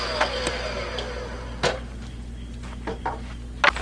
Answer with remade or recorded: recorded